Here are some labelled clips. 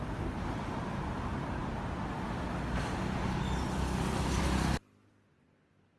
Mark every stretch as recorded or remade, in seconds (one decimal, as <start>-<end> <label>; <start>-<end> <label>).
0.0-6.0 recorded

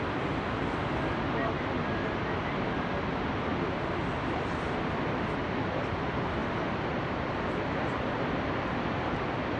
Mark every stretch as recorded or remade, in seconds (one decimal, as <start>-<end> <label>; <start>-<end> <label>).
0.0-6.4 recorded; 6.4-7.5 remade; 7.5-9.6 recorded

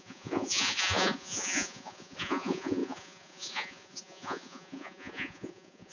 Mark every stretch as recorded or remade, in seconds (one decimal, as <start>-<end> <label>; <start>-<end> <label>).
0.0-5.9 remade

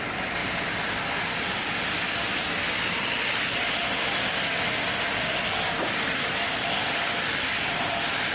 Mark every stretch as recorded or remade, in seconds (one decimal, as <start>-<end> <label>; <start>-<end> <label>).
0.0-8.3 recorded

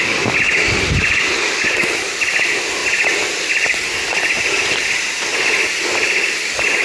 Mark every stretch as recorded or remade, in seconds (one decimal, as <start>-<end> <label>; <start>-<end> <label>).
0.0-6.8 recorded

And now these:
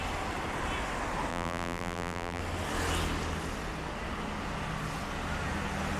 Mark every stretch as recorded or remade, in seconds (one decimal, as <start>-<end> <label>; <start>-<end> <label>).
0.0-1.3 recorded; 1.3-2.4 remade; 2.4-6.0 recorded

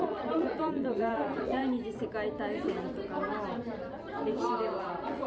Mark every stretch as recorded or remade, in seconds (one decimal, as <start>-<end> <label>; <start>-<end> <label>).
0.0-1.6 remade; 1.6-4.8 recorded; 4.8-5.3 remade